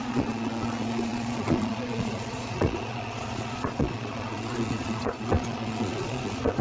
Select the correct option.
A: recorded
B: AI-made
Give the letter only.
B